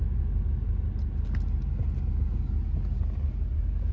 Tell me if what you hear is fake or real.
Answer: real